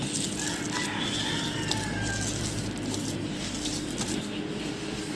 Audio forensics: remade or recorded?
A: recorded